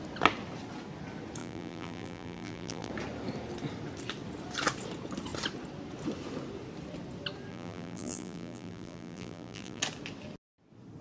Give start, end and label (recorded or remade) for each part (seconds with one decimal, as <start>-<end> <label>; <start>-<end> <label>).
0.0-1.4 recorded; 1.4-2.9 remade; 2.9-7.5 recorded; 7.5-9.8 remade; 9.8-11.0 recorded